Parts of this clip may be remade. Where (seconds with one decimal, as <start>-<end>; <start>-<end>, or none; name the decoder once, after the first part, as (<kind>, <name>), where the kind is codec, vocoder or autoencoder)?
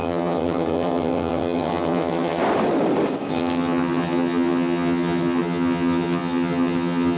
0.0-2.4 (vocoder, HiFi-GAN); 3.3-7.2